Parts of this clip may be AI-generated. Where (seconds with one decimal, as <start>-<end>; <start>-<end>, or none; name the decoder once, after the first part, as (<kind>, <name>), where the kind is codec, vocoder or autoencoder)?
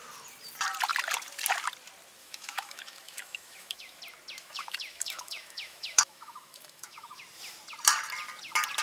2.2-4.0 (autoencoder, DAC-VAE); 4.4-7.2